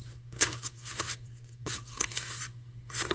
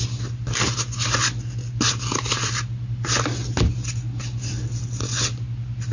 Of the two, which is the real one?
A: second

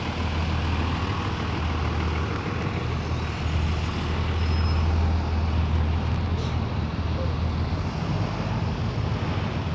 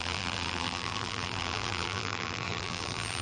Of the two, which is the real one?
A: first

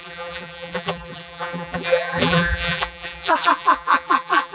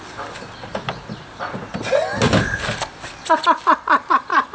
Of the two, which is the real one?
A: second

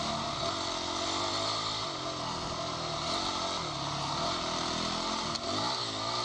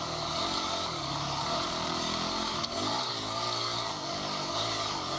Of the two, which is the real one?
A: first